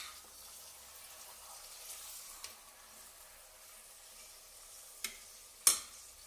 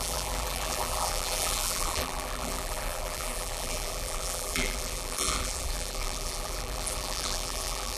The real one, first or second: first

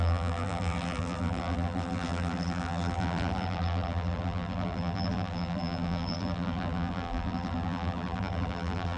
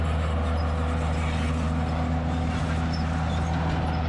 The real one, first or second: second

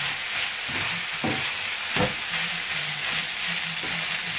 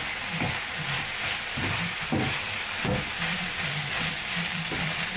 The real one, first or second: first